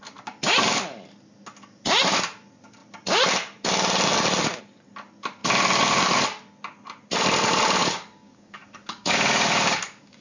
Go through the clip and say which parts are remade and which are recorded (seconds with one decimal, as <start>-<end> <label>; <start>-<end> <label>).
0.0-7.8 recorded; 7.8-10.2 remade